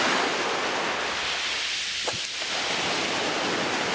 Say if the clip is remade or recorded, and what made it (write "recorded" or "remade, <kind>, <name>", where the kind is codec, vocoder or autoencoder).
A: recorded